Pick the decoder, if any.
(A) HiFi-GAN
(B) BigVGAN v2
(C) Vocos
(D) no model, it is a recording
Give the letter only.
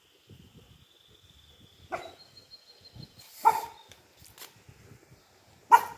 D